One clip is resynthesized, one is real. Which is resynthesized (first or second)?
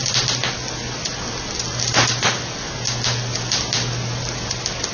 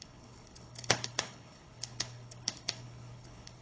second